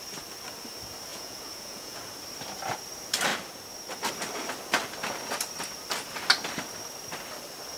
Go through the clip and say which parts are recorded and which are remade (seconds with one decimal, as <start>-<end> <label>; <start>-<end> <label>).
0.0-1.1 recorded; 1.1-2.0 remade; 2.0-7.8 recorded